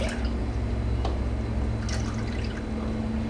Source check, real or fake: real